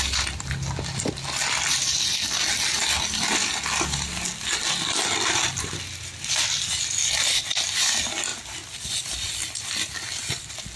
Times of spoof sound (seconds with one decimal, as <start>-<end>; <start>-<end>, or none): none